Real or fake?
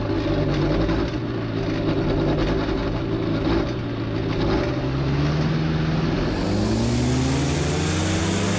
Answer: real